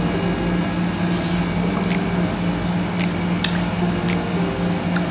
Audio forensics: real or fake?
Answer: real